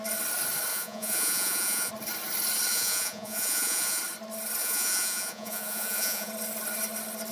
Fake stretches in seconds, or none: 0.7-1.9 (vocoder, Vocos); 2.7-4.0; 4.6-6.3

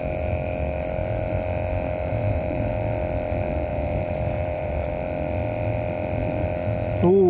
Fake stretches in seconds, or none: 2.1-2.7 (vocoder, BigVGAN v2); 3.7-4.9

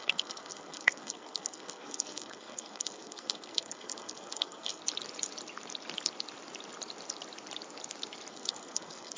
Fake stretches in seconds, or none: 0.0-4.8 (codec, SNAC); 8.3-9.2

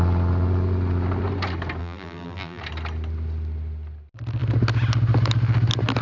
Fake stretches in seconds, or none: 1.8-2.6 (vocoder, BigVGAN v2)

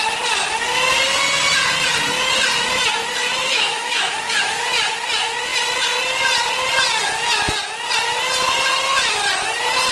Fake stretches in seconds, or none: 3.4-4.6 (autoencoder, DAC-VAE)

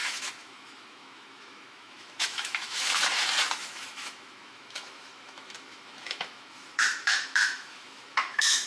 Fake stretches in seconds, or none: 0.0-3.0 (autoencoder, DAC-VAE); 3.6-8.7

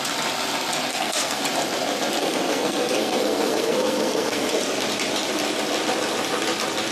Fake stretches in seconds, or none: 0.9-1.4 (codec, SNAC); 2.2-4.5